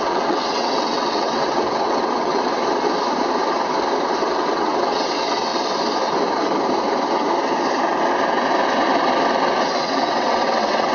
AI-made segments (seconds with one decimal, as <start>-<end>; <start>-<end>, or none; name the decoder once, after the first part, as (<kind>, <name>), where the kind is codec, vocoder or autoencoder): 0.0-2.6 (vocoder, WaveNeXt); 4.2-5.5; 9.6-10.9